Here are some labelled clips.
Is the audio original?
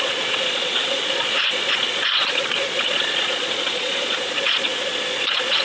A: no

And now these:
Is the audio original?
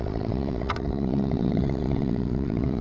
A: no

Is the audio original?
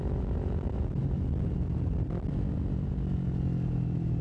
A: yes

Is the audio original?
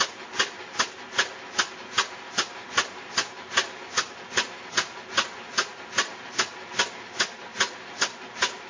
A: yes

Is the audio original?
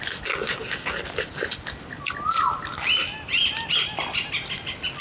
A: yes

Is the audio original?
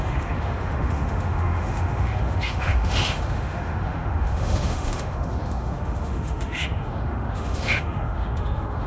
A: no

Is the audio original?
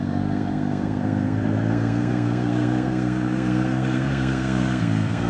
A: no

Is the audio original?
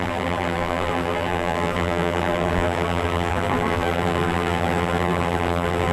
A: no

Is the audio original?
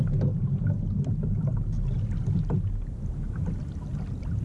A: yes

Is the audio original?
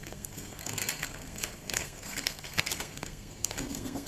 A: no